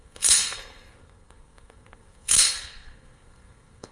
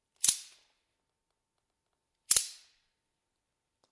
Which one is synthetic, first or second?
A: first